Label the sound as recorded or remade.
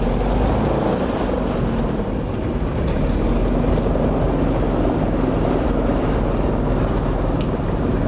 recorded